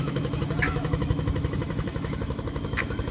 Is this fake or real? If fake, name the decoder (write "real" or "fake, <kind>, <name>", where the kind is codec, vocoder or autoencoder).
fake, autoencoder, DAC-VAE